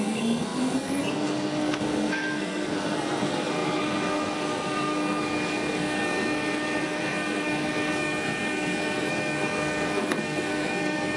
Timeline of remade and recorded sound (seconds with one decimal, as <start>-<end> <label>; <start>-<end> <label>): 0.0-11.2 remade